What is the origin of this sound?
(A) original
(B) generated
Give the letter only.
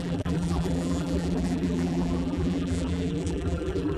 B